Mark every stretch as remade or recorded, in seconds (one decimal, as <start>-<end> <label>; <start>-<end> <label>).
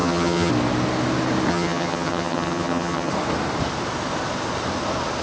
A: 0.0-0.5 remade; 0.5-1.5 recorded; 1.5-3.1 remade; 3.1-5.2 recorded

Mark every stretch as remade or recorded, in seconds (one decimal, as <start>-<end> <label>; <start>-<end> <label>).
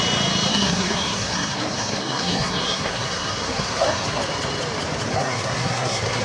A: 0.0-0.5 recorded; 0.5-4.2 remade; 4.2-5.1 recorded; 5.1-6.2 remade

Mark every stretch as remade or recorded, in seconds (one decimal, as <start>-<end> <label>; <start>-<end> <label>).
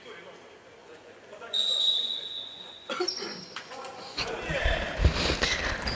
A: 0.0-0.8 recorded; 0.8-4.3 remade; 4.3-5.9 recorded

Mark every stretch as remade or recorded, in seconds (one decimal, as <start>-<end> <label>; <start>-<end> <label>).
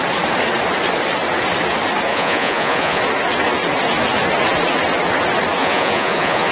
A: 0.0-2.1 recorded; 2.1-3.0 remade; 3.0-5.6 recorded; 5.6-6.5 remade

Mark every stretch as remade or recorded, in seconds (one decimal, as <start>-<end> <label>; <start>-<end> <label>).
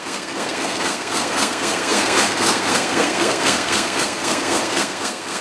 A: 0.0-5.4 remade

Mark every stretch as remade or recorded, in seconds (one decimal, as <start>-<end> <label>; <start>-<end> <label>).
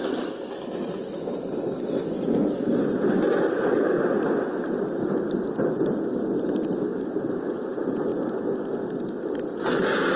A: 0.0-10.2 recorded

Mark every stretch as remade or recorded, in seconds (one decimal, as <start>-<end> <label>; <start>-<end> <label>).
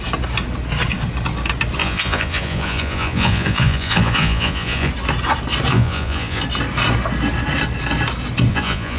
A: 0.0-1.8 recorded; 1.8-4.9 remade; 4.9-5.7 recorded; 5.7-6.4 remade; 6.4-8.5 recorded; 8.5-9.0 remade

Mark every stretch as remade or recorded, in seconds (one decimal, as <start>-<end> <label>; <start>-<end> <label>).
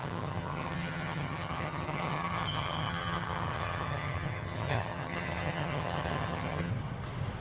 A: 0.0-6.7 remade; 6.7-7.4 recorded